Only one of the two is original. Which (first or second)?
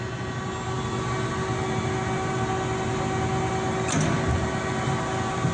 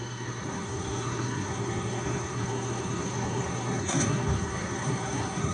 first